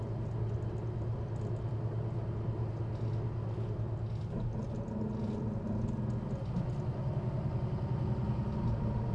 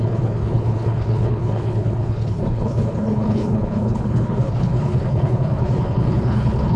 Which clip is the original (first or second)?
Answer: first